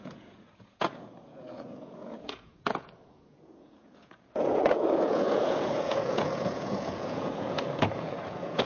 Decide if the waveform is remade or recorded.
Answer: remade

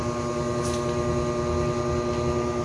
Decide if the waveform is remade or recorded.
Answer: recorded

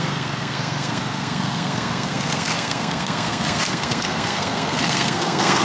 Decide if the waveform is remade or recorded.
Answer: remade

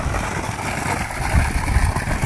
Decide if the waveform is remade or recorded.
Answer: recorded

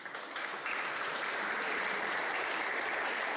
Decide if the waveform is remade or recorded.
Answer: remade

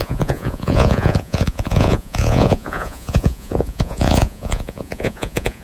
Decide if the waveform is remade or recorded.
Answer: remade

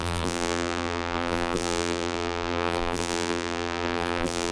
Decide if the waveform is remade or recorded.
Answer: remade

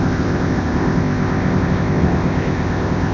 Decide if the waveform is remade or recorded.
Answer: remade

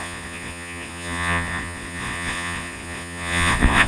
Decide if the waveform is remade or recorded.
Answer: remade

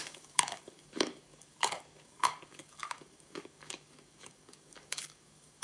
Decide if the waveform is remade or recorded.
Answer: remade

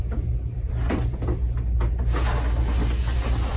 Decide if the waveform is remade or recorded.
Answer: recorded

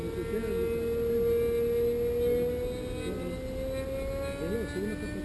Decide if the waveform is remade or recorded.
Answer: recorded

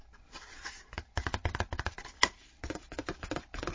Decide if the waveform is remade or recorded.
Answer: remade